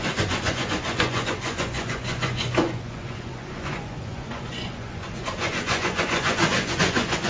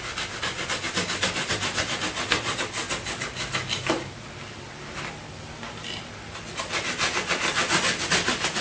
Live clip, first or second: second